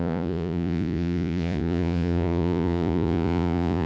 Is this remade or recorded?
remade